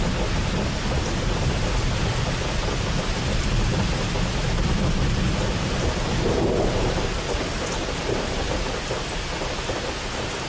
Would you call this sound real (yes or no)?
yes